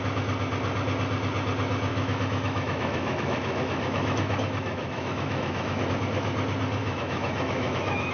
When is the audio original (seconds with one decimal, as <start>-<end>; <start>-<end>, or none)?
0.0-1.9; 5.9-6.8